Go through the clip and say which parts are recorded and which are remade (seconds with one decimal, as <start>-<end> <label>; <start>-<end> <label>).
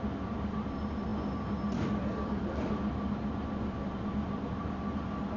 0.0-5.4 recorded